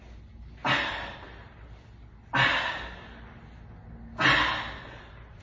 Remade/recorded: recorded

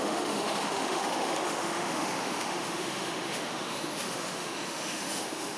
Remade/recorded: remade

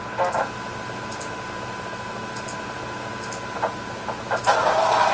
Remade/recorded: recorded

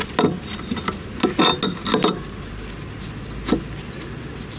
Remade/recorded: recorded